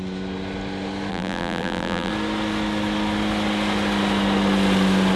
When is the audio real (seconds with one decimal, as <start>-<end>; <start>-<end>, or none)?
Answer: 0.0-1.1; 2.1-5.2